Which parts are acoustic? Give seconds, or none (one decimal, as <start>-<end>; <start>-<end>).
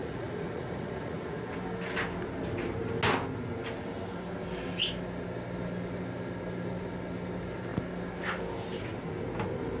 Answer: 1.4-9.8